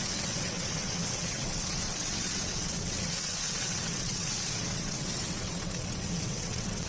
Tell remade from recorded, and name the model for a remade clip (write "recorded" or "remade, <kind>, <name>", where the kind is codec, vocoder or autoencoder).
remade, vocoder, WaveNeXt